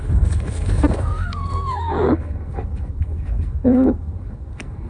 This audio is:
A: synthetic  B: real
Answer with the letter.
A